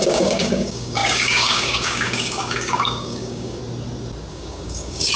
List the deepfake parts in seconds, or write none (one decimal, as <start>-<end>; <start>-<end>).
0.0-3.6; 4.3-5.2